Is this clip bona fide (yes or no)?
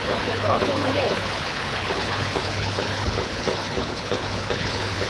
no